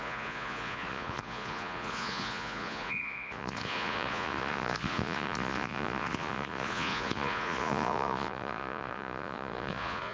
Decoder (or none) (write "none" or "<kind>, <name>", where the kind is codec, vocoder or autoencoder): vocoder, Vocos